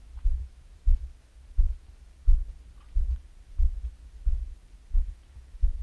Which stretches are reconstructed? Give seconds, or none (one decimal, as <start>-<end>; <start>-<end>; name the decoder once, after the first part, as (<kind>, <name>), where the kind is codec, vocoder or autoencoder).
0.0-2.1 (autoencoder, DAC-VAE); 3.5-4.4; 5.1-5.8